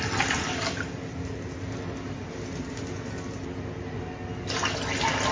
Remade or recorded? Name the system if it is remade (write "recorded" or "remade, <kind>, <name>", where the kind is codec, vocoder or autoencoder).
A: recorded